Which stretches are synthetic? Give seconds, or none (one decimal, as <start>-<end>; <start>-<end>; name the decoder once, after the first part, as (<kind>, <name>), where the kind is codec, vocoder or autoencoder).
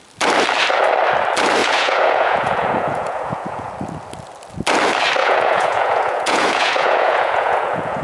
1.6-3.7 (vocoder, Vocos); 5.2-8.0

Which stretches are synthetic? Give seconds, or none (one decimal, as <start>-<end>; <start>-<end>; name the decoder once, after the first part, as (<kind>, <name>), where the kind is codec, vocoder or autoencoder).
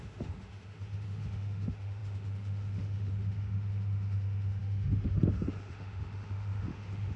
0.0-7.2 (autoencoder, DAC-VAE)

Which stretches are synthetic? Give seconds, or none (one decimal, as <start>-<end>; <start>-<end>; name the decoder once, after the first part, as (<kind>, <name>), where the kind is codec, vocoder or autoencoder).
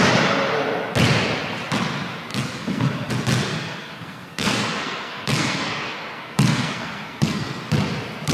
2.3-3.1 (codec, SNAC); 3.5-7.6